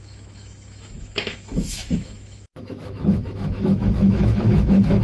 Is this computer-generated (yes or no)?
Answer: yes